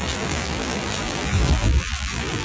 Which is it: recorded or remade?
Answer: remade